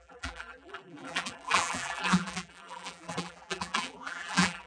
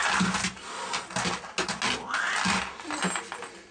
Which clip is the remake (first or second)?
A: first